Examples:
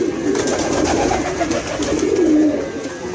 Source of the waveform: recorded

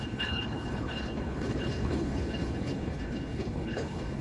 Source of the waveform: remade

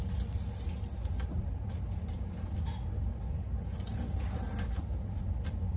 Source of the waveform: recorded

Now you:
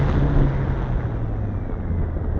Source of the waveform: recorded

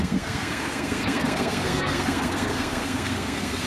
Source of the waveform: remade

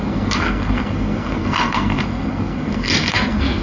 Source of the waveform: remade